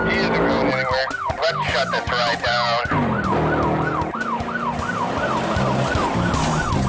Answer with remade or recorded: recorded